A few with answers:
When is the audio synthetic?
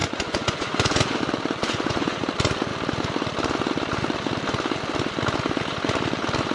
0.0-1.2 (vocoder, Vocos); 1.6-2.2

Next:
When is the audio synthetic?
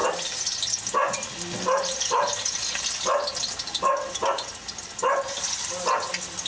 none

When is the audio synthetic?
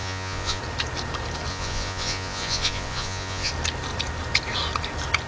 0.0-0.6 (vocoder, Vocos); 1.5-3.5